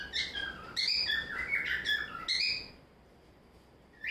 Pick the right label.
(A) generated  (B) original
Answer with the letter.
B